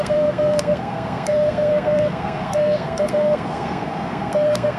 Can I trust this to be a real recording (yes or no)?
no